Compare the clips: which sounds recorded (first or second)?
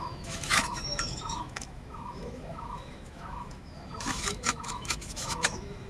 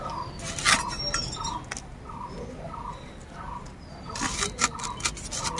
second